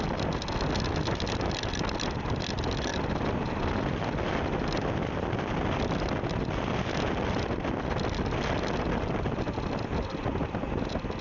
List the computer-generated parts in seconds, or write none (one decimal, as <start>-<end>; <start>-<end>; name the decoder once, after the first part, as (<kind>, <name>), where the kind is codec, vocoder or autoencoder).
none

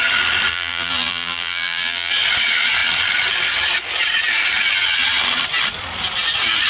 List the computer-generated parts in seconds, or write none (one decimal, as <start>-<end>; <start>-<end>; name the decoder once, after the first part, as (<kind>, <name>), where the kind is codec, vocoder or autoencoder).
0.5-2.1 (vocoder, BigVGAN v2)

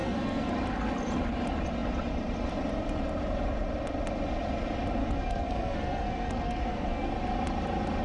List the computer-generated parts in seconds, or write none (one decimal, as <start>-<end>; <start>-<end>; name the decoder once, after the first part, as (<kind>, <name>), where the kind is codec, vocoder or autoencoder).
0.0-0.5 (codec, SNAC); 5.0-7.1